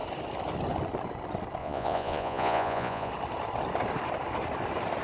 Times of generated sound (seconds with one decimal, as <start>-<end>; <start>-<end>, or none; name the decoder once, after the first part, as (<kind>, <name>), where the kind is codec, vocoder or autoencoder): 1.6-3.1 (vocoder, Vocos)

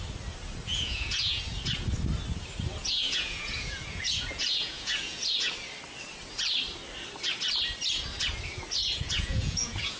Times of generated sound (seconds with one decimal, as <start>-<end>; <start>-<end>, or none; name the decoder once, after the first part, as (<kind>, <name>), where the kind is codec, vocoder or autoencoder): 0.7-1.4 (vocoder, Vocos); 2.8-5.5; 8.8-10.0